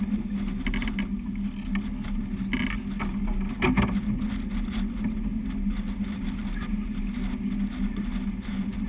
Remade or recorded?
recorded